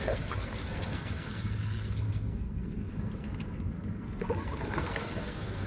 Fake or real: fake